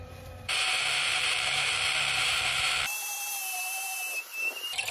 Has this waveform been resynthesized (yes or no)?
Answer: yes